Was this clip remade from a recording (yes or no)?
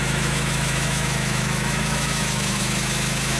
yes